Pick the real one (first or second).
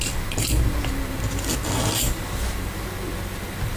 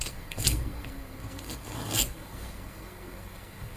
first